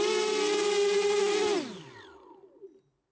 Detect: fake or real real